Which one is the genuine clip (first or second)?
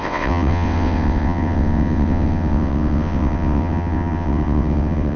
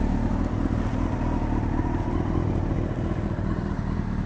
second